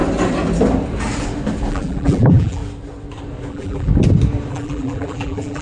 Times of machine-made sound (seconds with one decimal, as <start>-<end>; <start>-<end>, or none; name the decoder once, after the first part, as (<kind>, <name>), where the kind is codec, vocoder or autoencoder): 1.7-2.6 (vocoder, BigVGAN v2); 3.5-3.9; 4.5-5.6